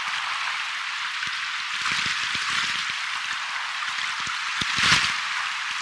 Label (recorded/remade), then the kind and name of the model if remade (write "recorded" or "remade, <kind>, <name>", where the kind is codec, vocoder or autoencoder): recorded